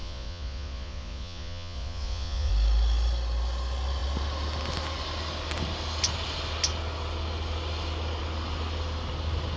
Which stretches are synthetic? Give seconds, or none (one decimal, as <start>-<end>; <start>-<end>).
0.0-2.5